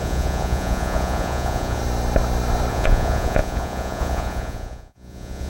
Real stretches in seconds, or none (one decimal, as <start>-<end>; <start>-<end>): 1.8-2.7